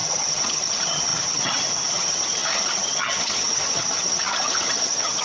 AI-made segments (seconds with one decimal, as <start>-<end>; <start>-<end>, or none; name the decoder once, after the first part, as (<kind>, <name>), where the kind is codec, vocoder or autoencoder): 0.0-5.2 (vocoder, HiFi-GAN)